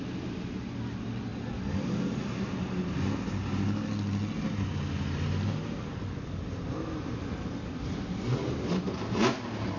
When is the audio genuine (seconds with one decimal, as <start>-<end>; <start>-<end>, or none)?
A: 0.0-9.8